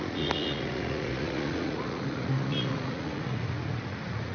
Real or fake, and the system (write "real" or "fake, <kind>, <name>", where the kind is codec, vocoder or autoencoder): fake, vocoder, Vocos